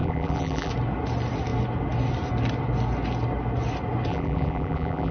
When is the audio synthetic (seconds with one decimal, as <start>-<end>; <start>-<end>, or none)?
0.0-0.7; 4.1-5.1